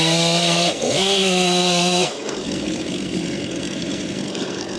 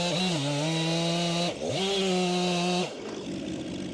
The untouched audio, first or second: second